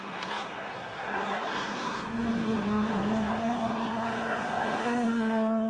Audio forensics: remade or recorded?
remade